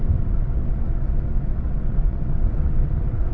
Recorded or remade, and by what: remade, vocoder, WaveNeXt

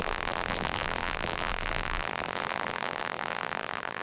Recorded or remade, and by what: remade, vocoder, BigVGAN v2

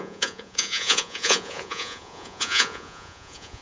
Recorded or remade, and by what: remade, vocoder, Vocos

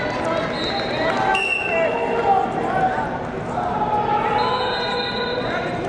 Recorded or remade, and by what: recorded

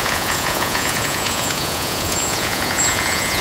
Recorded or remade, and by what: remade, vocoder, Vocos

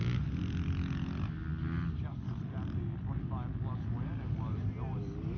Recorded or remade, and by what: recorded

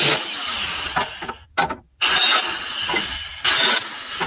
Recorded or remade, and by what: recorded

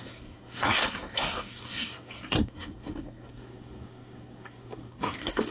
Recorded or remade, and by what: remade, codec, SNAC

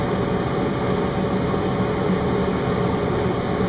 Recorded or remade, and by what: recorded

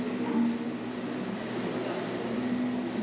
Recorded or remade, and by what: recorded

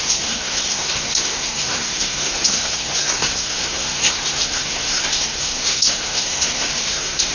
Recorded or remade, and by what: remade, codec, SNAC